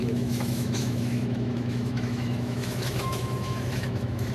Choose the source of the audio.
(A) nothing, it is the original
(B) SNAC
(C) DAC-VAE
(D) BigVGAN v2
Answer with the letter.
C